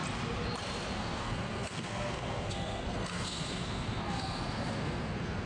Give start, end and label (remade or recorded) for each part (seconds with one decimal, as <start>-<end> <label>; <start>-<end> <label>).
0.0-1.0 recorded; 1.0-5.5 remade